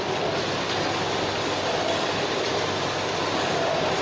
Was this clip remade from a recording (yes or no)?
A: no